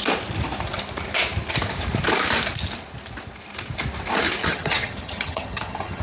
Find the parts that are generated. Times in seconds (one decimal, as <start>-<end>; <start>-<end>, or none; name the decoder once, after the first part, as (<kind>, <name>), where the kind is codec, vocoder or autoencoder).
4.4-6.0 (vocoder, HiFi-GAN)